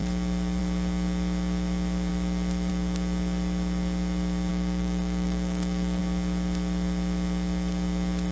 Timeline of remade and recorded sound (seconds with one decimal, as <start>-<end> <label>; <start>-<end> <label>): 0.0-4.5 recorded; 4.5-6.0 remade; 6.0-8.3 recorded